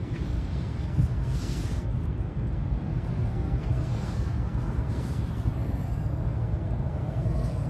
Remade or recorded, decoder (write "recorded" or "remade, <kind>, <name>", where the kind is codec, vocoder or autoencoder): remade, codec, SNAC